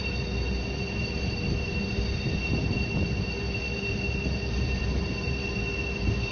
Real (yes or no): yes